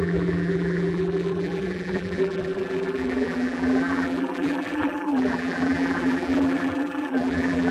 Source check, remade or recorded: remade